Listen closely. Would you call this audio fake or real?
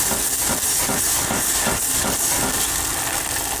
real